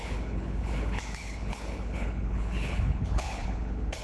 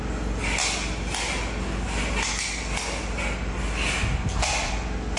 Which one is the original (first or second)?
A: second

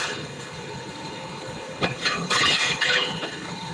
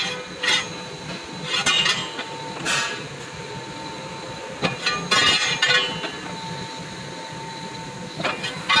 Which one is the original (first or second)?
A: second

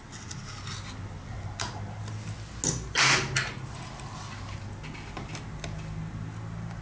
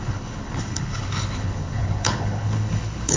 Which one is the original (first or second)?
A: first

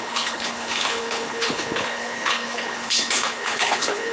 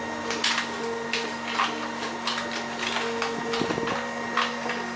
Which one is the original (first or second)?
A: second